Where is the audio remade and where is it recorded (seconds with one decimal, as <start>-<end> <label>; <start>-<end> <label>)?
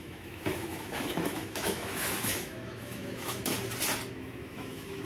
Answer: 0.0-3.5 remade; 3.5-4.1 recorded; 4.1-5.1 remade